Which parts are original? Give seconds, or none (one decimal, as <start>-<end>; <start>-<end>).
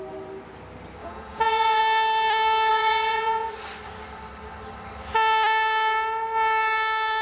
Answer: 0.0-1.0; 1.8-2.7; 3.5-7.2